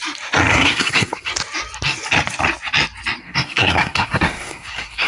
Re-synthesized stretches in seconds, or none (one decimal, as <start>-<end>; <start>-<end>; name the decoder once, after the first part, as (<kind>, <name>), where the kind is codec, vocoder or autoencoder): 0.5-1.3 (codec, SNAC); 3.2-5.1